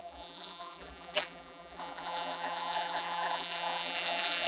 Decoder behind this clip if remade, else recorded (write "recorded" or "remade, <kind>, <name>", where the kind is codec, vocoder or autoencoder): remade, vocoder, BigVGAN v2